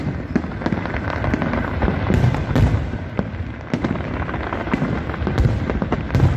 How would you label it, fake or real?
real